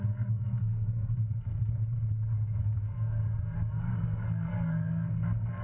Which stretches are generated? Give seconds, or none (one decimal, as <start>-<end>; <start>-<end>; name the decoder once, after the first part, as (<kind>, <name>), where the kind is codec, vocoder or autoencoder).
0.0-1.8 (codec, SNAC); 2.6-3.2; 3.8-5.6